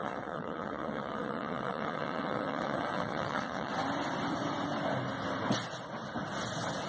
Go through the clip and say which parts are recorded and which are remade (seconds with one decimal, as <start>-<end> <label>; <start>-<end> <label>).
0.0-3.7 remade; 3.7-6.9 recorded